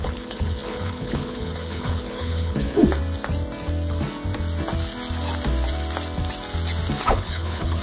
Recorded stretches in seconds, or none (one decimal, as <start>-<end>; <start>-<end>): 2.8-7.1